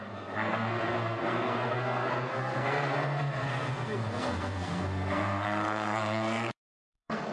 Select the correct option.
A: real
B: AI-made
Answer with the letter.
B